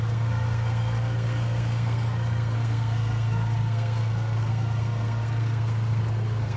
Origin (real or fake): fake